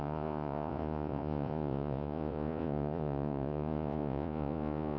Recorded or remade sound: remade